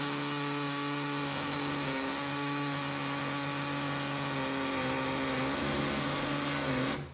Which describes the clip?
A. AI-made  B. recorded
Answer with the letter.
B